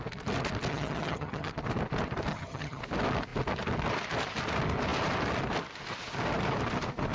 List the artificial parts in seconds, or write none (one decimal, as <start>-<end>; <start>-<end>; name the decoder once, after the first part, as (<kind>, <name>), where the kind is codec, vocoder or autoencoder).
0.7-1.5 (vocoder, HiFi-GAN); 2.3-2.8